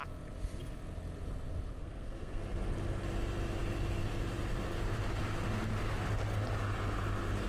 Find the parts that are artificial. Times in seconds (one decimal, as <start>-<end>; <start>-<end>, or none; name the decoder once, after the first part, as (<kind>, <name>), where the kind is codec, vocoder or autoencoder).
1.8-2.4 (codec, SNAC)